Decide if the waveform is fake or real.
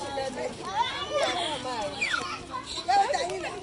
real